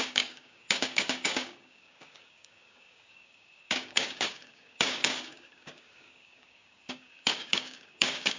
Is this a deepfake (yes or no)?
yes